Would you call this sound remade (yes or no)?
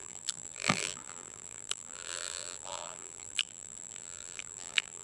yes